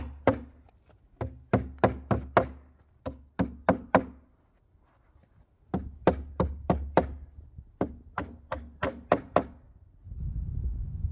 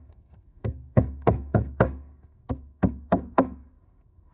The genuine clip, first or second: first